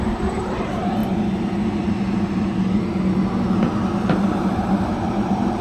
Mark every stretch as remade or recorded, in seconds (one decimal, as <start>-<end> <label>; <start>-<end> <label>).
0.0-1.0 remade; 1.0-4.4 recorded; 4.4-5.6 remade